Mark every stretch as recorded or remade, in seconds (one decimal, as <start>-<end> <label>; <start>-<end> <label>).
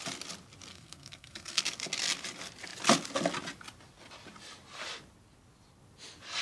0.0-0.7 recorded; 0.7-1.6 remade; 1.6-6.4 recorded